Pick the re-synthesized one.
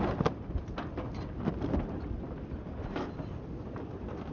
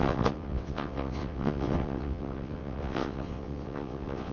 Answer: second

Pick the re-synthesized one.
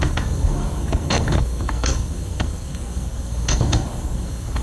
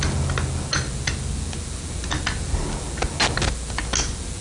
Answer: first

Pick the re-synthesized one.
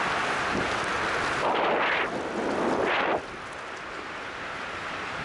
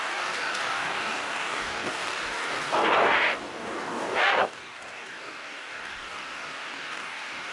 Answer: second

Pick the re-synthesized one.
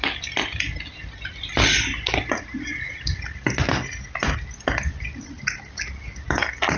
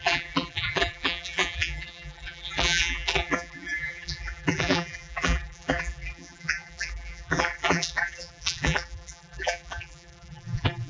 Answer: second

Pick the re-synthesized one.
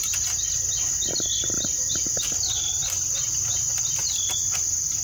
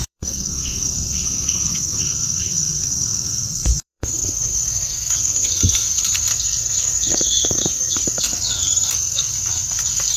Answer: second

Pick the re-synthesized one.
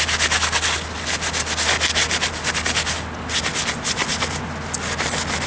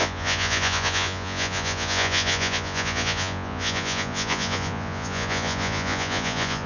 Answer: second